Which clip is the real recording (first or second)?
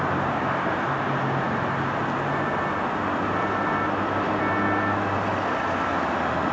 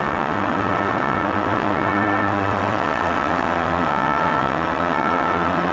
first